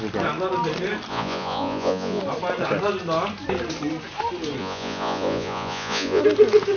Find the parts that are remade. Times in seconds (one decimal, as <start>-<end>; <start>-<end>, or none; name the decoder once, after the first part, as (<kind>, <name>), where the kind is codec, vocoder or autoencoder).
1.1-2.2 (vocoder, Vocos); 4.6-6.2